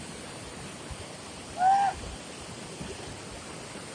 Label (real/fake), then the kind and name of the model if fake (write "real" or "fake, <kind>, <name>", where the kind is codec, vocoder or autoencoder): real